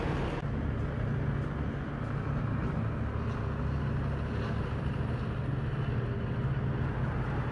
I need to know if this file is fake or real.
real